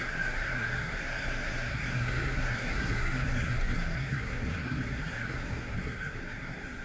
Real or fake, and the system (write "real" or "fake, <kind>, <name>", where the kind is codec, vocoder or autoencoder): fake, codec, SNAC